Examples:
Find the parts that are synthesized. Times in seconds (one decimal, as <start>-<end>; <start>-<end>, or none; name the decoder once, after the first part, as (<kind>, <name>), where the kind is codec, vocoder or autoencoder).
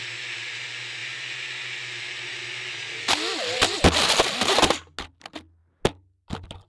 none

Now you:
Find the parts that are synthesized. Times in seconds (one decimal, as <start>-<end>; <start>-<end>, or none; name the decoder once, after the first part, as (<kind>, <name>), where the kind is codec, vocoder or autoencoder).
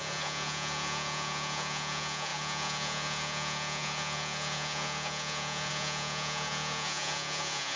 0.0-7.8 (vocoder, Vocos)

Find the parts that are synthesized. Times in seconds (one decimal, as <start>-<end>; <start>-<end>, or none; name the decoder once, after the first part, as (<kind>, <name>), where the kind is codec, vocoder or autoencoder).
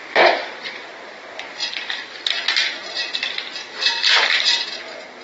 0.4-0.9 (vocoder, BigVGAN v2); 3.6-4.8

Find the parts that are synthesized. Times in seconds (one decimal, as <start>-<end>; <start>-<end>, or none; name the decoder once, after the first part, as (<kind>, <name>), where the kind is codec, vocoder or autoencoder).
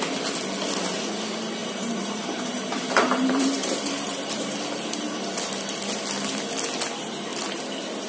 1.6-4.6 (vocoder, BigVGAN v2)